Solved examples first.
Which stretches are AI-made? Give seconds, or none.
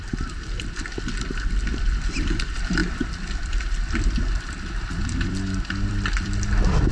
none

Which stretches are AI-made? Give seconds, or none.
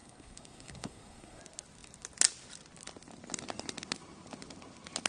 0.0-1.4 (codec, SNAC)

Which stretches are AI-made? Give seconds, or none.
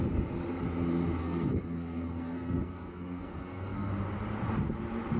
1.2-3.9 (codec, SNAC)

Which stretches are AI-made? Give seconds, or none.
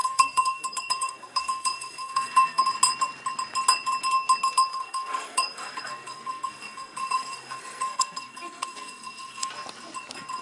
0.0-2.6 (codec, SNAC); 4.7-9.5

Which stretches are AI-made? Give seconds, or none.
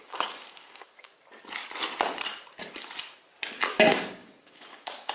0.0-1.1 (codec, DAC); 3.7-5.1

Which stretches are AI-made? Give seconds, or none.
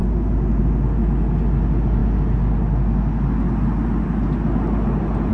none